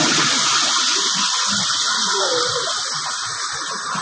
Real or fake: real